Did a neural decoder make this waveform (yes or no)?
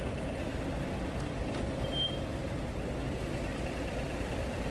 no